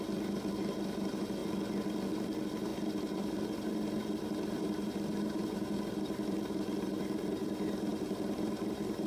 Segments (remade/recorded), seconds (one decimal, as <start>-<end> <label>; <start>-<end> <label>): 0.0-1.4 remade; 1.4-2.1 recorded; 2.1-9.1 remade